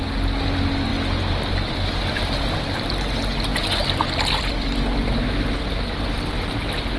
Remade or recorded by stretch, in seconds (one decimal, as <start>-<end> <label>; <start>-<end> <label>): 0.0-7.0 recorded